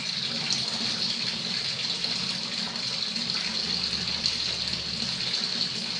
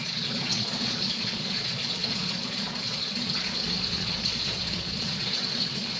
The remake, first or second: second